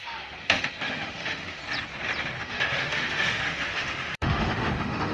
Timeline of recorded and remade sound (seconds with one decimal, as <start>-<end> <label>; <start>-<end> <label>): 0.0-1.6 remade; 1.6-2.4 recorded; 2.4-5.1 remade